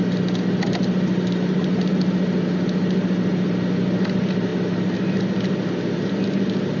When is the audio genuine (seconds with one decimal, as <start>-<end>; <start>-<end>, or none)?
0.0-6.8